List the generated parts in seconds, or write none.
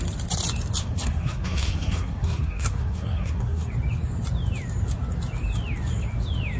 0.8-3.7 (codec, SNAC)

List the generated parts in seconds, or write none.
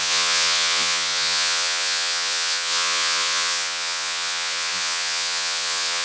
0.0-6.0 (vocoder, Vocos)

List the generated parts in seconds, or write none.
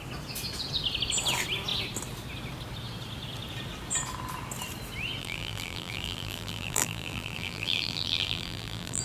5.2-9.0 (vocoder, BigVGAN v2)